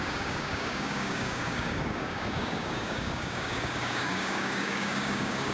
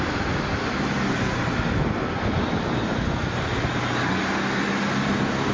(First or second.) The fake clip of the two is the first